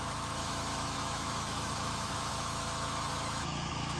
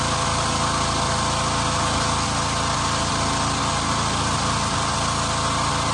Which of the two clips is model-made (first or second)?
first